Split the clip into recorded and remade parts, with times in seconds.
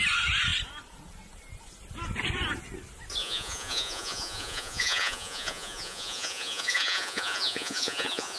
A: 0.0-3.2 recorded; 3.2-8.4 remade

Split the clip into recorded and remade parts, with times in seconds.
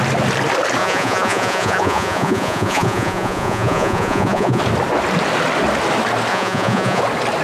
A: 0.0-0.8 recorded; 0.8-4.6 remade; 4.6-6.3 recorded; 6.3-7.0 remade; 7.0-7.4 recorded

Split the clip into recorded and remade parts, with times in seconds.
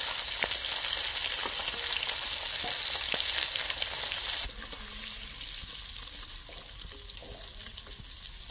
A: 0.0-8.5 recorded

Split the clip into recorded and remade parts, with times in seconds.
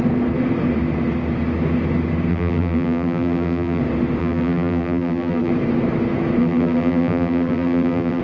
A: 0.0-2.3 recorded; 2.3-3.8 remade; 3.8-4.2 recorded; 4.2-5.5 remade; 5.5-6.4 recorded; 6.4-8.2 remade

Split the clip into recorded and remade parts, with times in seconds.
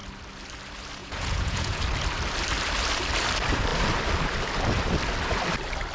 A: 0.0-1.0 recorded; 1.0-1.8 remade; 1.8-5.9 recorded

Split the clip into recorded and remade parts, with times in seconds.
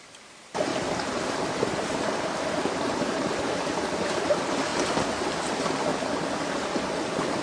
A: 0.0-4.7 remade; 4.7-5.5 recorded; 5.5-5.9 remade; 5.9-7.0 recorded; 7.0-7.4 remade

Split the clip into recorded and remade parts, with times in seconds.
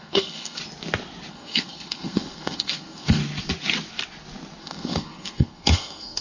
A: 0.0-0.6 remade; 0.6-1.3 recorded; 1.3-3.2 remade; 3.2-4.6 recorded; 4.6-6.2 remade